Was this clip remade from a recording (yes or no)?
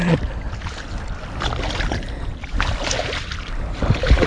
no